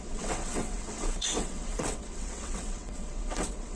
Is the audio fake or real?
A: fake